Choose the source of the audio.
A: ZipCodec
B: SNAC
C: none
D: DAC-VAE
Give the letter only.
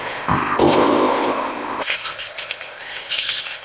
A